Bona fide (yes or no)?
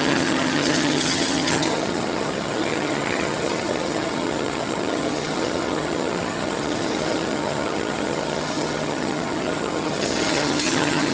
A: no